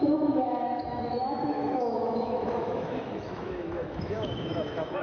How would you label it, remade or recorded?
remade